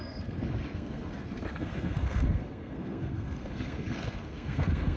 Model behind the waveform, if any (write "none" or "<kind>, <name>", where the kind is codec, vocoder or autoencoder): codec, SNAC